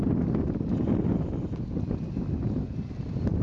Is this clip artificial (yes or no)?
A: no